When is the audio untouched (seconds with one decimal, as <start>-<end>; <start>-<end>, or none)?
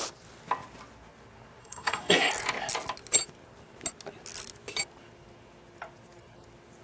0.0-1.6; 2.3-6.8